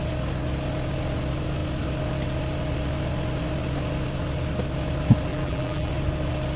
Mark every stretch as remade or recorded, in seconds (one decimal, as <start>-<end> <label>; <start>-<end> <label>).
0.0-5.3 recorded; 5.3-5.9 remade; 5.9-6.6 recorded

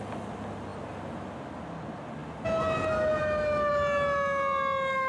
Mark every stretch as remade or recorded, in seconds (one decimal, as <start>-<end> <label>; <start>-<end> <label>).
0.0-5.1 recorded

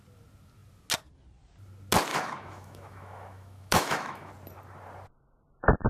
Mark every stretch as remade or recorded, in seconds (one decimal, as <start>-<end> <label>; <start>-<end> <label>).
0.0-2.1 recorded; 2.1-4.3 remade; 4.3-5.9 recorded